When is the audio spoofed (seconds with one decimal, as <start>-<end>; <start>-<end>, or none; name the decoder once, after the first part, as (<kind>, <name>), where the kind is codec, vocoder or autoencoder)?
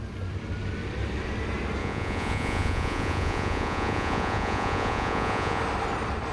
1.8-5.6 (vocoder, Vocos)